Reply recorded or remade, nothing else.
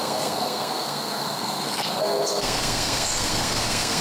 remade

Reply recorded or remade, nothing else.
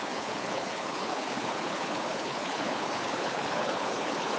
remade